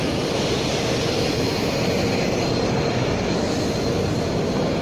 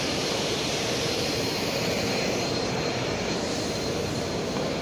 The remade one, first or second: second